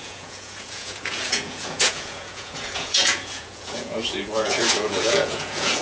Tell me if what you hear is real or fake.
fake